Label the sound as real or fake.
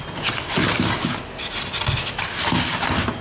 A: real